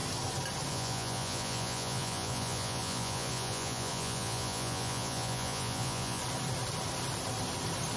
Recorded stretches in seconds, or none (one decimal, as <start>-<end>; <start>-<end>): 0.0-0.7; 6.2-8.0